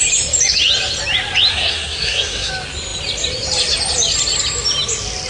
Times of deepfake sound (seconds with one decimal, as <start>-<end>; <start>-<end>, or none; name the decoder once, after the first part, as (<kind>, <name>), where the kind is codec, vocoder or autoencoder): 1.5-2.5 (codec, SNAC)

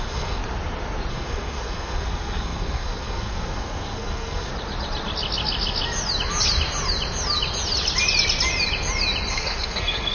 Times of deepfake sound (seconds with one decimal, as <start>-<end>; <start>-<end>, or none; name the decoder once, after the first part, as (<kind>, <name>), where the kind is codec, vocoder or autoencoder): 0.0-0.4 (codec, SNAC); 1.1-4.5; 9.3-10.1